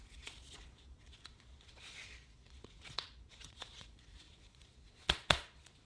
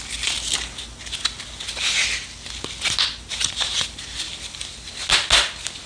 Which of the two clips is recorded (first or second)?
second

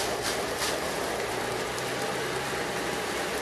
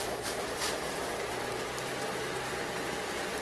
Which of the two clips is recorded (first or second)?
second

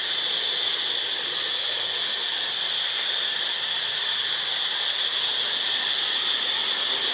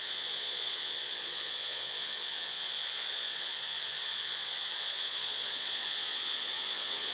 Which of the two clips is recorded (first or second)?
first